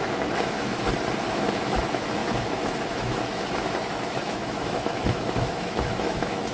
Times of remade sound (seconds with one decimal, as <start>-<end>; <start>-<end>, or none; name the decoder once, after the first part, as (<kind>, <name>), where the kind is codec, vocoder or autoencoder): 0.0-0.8 (autoencoder, DAC-VAE); 1.3-6.5